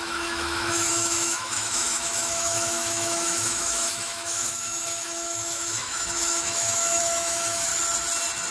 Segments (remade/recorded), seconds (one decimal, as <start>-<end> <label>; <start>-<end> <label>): 0.0-7.7 remade; 7.7-8.5 recorded